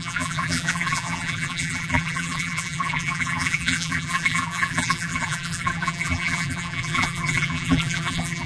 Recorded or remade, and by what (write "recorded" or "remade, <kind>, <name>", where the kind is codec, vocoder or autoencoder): remade, vocoder, BigVGAN v2